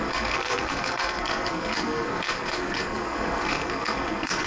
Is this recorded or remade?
remade